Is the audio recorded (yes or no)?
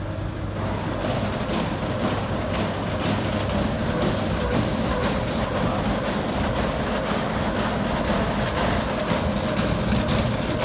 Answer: yes